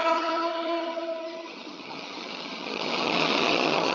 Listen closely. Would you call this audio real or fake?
fake